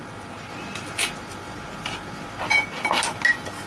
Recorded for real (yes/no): yes